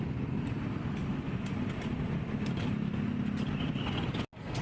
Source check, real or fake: real